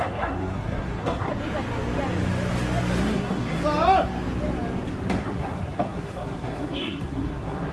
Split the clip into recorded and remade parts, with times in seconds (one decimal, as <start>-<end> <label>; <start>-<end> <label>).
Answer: 0.0-1.3 remade; 1.3-3.0 recorded; 3.0-3.6 remade; 3.6-5.1 recorded; 5.1-7.7 remade